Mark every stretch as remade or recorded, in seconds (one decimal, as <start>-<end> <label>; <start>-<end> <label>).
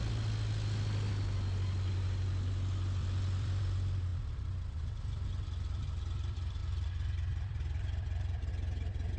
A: 0.0-3.0 recorded; 3.0-3.6 remade; 3.6-6.6 recorded; 6.6-8.5 remade; 8.5-9.2 recorded